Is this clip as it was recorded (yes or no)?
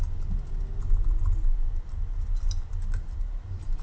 yes